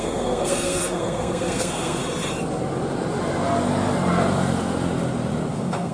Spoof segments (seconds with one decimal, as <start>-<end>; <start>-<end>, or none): 0.0-2.0; 5.5-5.9